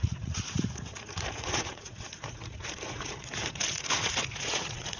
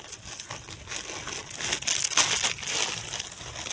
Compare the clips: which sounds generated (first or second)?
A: first